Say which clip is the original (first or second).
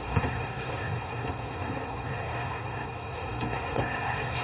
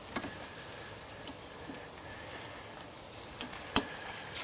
second